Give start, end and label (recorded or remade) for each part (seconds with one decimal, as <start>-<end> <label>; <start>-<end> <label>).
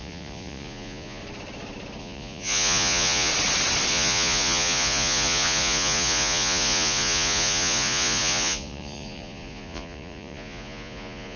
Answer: 0.0-1.2 remade; 1.2-2.0 recorded; 2.0-3.3 remade; 3.3-3.9 recorded; 3.9-11.4 remade